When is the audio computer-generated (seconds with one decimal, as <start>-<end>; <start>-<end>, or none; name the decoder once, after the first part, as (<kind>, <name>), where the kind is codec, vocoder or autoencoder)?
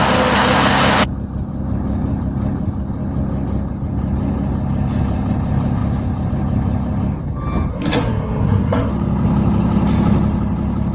7.7-8.9 (codec, SNAC)